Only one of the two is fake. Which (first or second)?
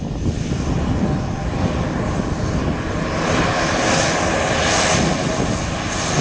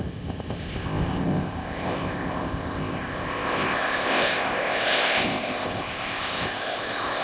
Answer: second